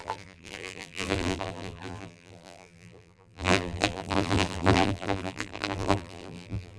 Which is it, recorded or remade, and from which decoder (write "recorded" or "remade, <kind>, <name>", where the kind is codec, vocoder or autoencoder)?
remade, vocoder, BigVGAN v2